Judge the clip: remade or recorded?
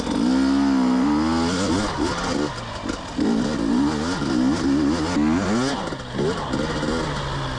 recorded